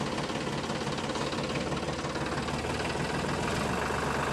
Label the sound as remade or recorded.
recorded